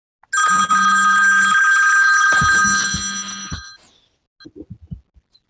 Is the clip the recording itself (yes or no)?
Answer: yes